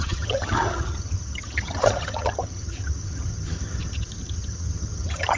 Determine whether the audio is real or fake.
fake